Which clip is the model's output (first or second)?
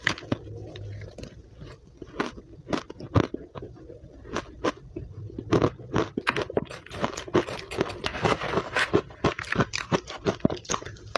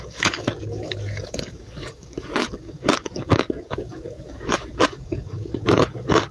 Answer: second